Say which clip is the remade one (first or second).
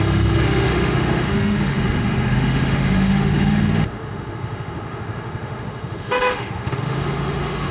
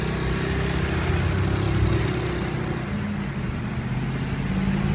first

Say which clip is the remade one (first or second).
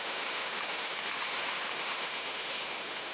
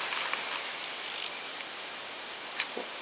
first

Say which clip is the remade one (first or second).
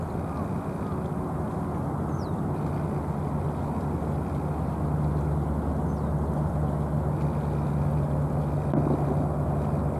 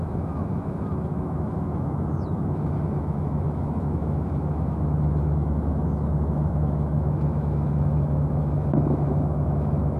second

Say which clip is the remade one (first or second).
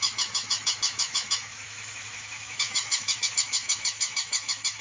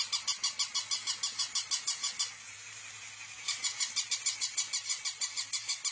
first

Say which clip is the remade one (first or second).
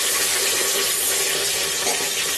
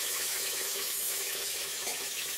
second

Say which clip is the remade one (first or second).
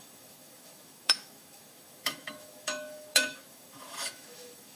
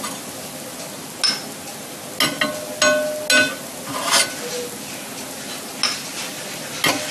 first